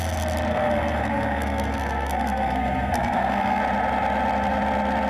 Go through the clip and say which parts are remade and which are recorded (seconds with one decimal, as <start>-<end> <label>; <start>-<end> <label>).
0.0-0.5 recorded; 0.5-3.6 remade; 3.6-5.1 recorded